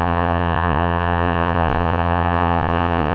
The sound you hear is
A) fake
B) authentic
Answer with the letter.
A